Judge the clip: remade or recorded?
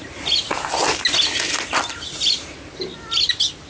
recorded